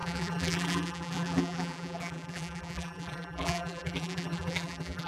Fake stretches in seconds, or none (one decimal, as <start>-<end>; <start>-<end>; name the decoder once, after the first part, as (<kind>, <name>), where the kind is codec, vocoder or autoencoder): 0.0-5.1 (vocoder, BigVGAN v2)